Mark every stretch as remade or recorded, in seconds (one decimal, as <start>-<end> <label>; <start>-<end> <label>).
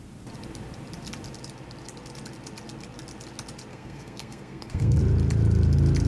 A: 0.0-3.7 recorded; 3.7-5.0 remade; 5.0-6.1 recorded